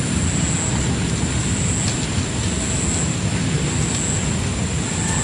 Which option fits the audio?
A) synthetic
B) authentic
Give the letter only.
B